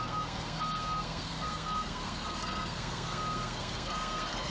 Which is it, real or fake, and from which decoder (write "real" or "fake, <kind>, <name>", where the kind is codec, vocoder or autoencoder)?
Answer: fake, codec, SNAC